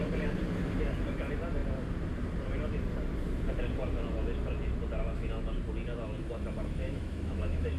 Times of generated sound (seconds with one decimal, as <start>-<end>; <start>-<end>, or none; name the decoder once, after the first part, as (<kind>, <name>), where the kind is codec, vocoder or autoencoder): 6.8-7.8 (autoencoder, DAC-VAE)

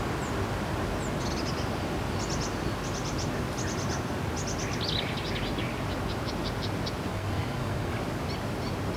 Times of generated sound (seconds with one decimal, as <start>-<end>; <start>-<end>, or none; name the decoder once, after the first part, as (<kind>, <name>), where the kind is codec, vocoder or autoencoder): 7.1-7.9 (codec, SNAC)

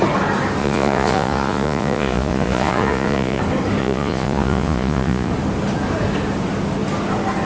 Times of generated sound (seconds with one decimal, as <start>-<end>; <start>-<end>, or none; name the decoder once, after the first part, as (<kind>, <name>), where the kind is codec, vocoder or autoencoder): 0.6-3.4 (vocoder, Vocos); 3.8-5.3